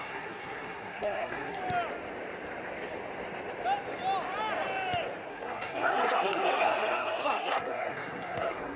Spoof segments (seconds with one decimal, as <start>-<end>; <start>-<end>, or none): 0.0-1.6; 5.3-8.8